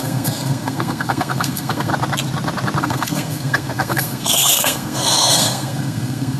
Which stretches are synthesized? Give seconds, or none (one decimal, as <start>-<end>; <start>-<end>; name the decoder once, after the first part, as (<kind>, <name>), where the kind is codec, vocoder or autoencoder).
0.0-1.9 (codec, SNAC); 2.8-6.4